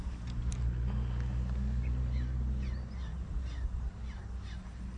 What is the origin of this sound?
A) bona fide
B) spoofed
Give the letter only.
A